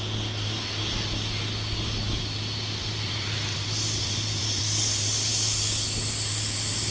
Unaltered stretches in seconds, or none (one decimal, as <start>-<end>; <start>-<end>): 0.0-2.8; 4.6-6.9